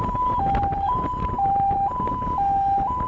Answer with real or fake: fake